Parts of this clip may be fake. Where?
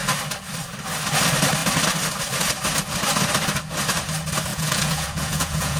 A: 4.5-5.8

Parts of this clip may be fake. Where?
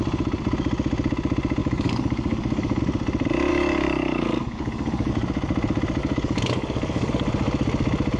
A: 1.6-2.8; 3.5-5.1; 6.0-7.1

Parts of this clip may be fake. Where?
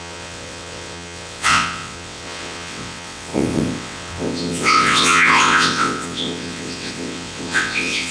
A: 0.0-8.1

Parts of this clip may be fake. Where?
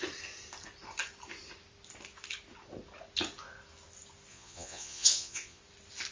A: 4.3-5.6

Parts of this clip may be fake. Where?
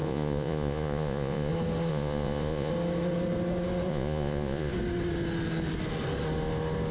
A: 0.0-1.5; 1.9-2.7; 3.9-4.7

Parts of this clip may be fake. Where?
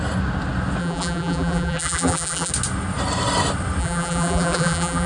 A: 0.8-2.5; 3.8-5.1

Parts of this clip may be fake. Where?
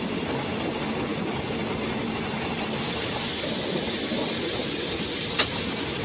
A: none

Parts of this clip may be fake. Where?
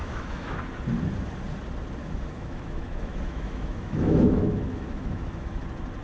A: 0.0-0.6; 2.0-5.6